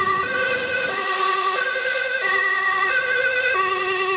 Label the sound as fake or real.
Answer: fake